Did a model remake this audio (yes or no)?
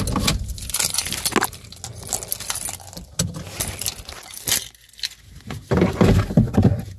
no